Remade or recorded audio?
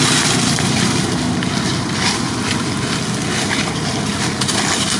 recorded